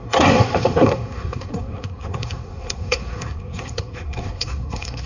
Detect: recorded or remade remade